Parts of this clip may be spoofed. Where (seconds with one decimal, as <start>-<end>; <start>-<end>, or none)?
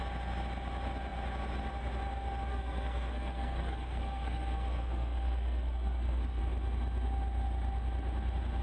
2.5-6.4